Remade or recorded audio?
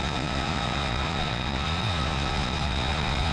remade